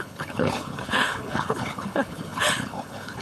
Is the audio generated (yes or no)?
yes